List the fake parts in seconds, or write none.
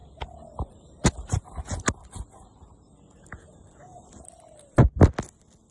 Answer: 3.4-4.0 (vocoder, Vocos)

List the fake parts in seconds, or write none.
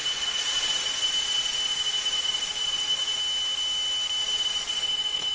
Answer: 0.0-3.2 (vocoder, Vocos); 4.2-5.3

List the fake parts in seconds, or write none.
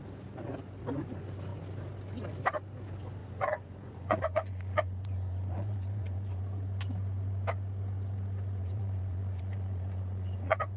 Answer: 3.2-6.4 (vocoder, Vocos); 8.6-10.8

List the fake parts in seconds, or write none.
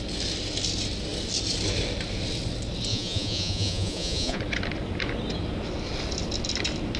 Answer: 2.9-4.4 (vocoder, Vocos)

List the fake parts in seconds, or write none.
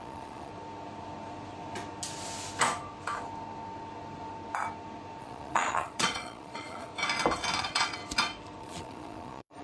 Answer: 0.0-0.5 (vocoder, Vocos); 5.2-6.9; 7.6-8.0; 8.6-9.6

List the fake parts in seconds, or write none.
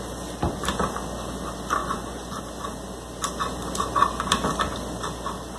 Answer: 1.8-2.4 (vocoder, Vocos)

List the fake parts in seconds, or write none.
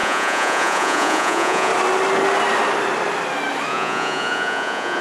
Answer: 0.0-1.7 (vocoder, Vocos); 3.7-5.0